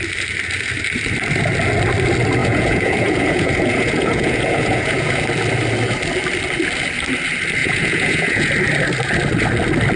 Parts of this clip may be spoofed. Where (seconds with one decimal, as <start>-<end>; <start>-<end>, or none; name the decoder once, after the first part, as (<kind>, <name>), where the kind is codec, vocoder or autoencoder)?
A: 2.4-5.2 (vocoder, Vocos); 7.6-8.5